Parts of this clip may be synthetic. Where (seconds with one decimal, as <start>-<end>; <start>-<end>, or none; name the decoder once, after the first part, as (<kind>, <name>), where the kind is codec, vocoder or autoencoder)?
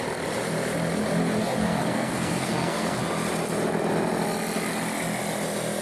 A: 1.4-3.0 (codec, SNAC)